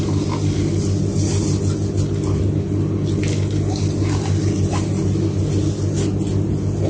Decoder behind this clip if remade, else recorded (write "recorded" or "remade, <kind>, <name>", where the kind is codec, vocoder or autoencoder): recorded